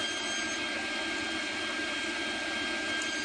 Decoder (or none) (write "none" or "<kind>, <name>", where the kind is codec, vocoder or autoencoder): none